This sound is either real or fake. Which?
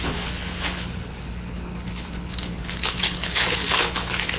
fake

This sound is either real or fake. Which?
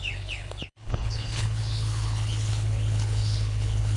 fake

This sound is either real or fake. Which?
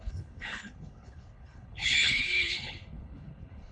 fake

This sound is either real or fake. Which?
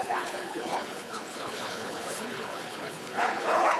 fake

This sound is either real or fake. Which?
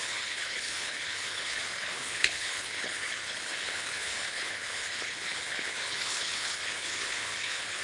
fake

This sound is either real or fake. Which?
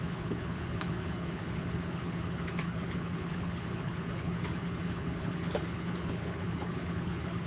fake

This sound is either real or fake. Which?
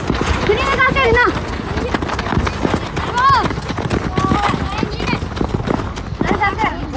real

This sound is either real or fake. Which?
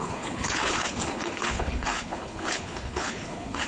fake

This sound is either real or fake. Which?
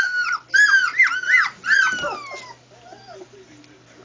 real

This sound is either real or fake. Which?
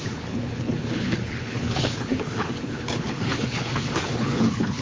fake